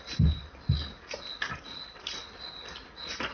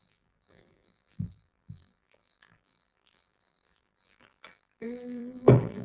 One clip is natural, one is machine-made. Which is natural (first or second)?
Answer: first